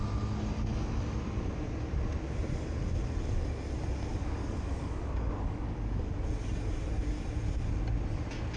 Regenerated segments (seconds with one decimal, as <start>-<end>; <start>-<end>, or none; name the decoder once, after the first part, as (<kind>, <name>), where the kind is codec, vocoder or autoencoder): 4.1-6.1 (codec, DAC)